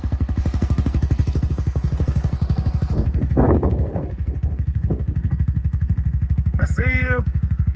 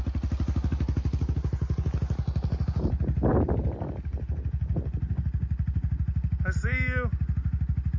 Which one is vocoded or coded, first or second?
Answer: first